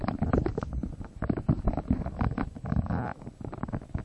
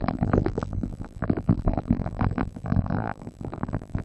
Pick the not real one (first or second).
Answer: second